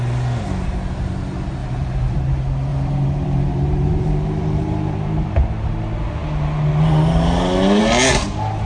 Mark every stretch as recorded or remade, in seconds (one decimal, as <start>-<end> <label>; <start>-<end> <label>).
0.0-1.6 recorded; 1.6-2.2 remade; 2.2-2.7 recorded; 2.7-5.4 remade; 5.4-8.7 recorded